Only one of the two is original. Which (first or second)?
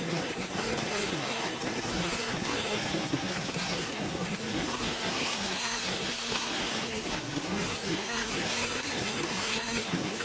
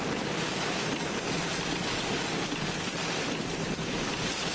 second